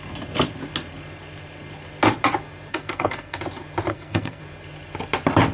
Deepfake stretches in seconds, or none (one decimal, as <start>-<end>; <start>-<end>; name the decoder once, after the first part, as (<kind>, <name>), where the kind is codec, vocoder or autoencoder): 2.7-3.4 (codec, SNAC); 3.9-4.4